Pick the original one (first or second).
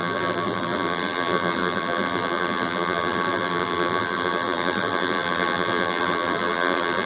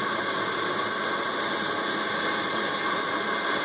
second